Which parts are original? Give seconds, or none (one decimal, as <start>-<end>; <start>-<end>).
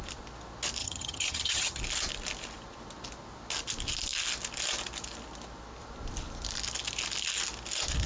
0.0-0.8; 1.8-8.1